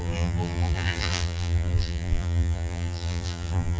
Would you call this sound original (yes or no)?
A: no